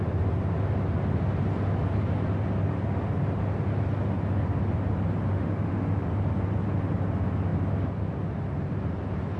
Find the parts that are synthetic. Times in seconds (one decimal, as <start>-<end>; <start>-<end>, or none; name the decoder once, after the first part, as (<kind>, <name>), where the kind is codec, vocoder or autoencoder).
5.3-6.1 (autoencoder, DAC-VAE)